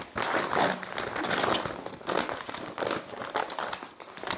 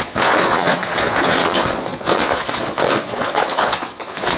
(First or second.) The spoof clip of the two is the second